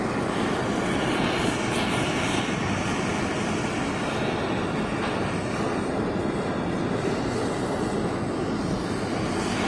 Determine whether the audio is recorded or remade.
recorded